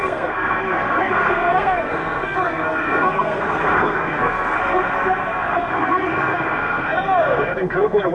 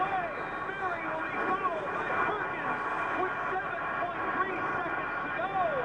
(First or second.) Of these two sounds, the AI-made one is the first